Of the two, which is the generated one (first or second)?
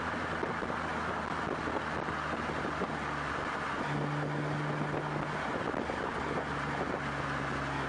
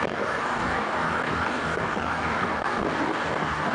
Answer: second